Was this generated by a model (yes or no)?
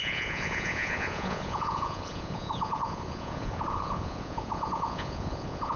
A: yes